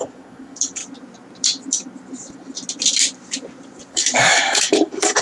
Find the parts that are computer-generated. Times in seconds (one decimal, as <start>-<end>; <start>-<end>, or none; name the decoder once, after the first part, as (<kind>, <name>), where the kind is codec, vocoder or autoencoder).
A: 0.0-0.8 (codec, DAC); 3.9-5.2